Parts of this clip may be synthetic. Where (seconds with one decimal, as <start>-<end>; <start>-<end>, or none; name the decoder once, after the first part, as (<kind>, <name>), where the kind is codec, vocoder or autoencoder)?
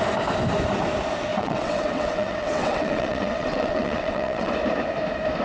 1.3-4.5 (vocoder, WaveNeXt)